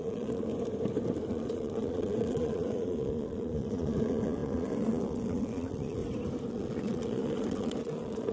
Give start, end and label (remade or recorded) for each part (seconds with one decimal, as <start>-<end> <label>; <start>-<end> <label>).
0.0-0.5 remade; 0.5-1.3 recorded; 1.3-6.0 remade; 6.0-6.5 recorded; 6.5-8.3 remade